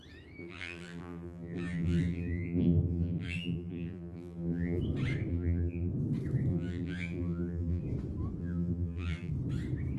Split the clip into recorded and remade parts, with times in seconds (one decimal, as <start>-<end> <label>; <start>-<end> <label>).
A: 0.0-0.4 recorded; 0.4-4.8 remade; 4.8-5.3 recorded; 5.3-5.9 remade; 5.9-6.5 recorded; 6.5-7.8 remade; 7.8-8.4 recorded; 8.4-9.3 remade; 9.3-10.0 recorded